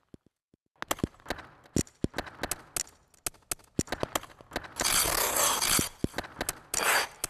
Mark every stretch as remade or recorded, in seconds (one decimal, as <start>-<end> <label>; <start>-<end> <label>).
0.0-7.3 recorded